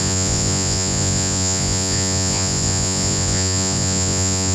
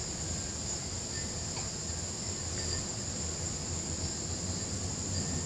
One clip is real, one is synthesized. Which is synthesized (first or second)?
first